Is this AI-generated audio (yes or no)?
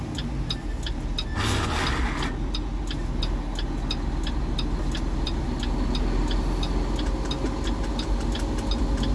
no